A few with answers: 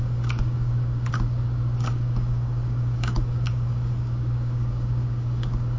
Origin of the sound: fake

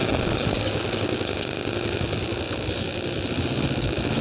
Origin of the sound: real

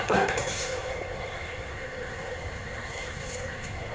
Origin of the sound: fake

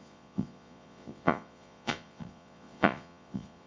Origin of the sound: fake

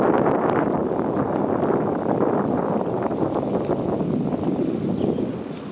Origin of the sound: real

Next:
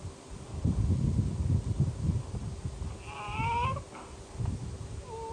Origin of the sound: real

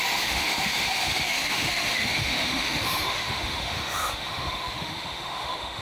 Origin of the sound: fake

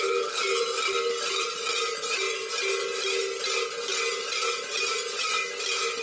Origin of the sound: real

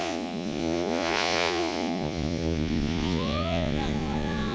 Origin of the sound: fake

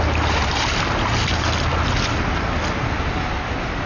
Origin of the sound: real